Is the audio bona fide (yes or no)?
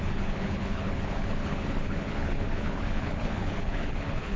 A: no